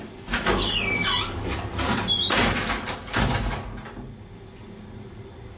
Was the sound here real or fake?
real